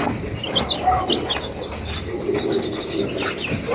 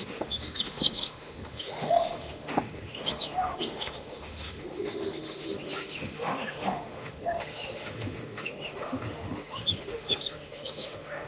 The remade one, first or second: second